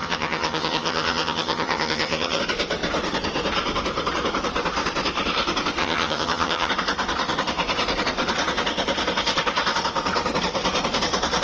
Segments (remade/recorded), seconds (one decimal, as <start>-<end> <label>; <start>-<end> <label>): 0.0-2.4 remade; 2.4-5.8 recorded; 5.8-6.7 remade; 6.7-11.4 recorded